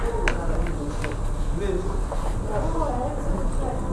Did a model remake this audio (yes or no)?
no